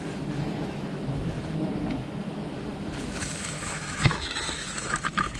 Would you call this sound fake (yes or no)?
yes